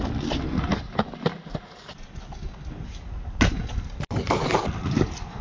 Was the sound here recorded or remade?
recorded